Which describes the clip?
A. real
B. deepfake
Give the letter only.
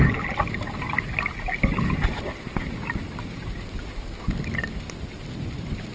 A